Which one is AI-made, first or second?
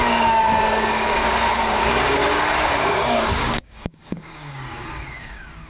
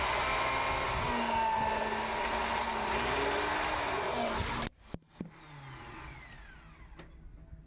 first